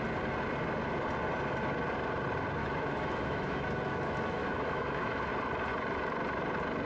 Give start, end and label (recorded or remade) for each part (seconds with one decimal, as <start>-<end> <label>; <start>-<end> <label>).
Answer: 0.0-2.6 recorded; 2.6-5.3 remade; 5.3-6.9 recorded